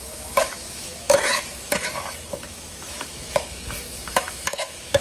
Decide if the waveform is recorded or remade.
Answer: remade